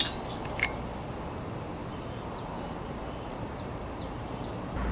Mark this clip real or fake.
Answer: real